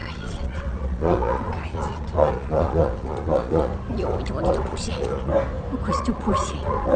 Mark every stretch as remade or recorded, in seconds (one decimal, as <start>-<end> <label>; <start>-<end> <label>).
0.0-3.7 remade; 3.7-4.5 recorded; 4.5-5.3 remade; 5.3-5.9 recorded; 5.9-7.0 remade